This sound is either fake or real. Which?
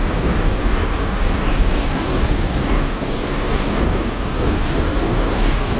fake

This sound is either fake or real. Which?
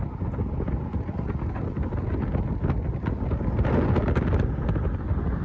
real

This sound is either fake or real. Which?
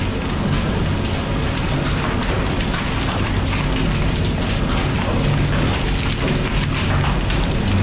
real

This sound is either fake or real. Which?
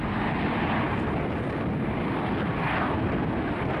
real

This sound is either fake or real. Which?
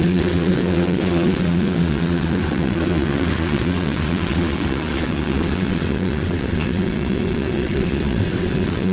fake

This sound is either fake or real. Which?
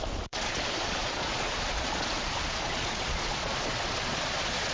fake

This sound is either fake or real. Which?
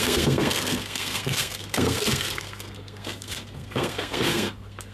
fake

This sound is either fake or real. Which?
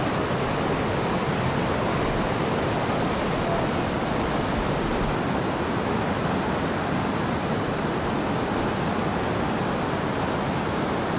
real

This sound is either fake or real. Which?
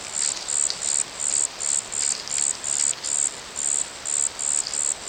real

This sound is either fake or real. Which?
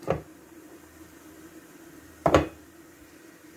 fake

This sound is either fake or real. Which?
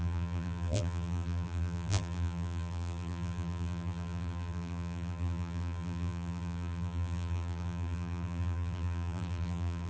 fake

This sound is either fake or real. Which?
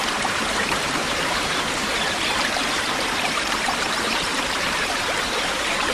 fake